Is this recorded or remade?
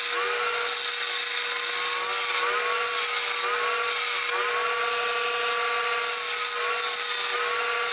recorded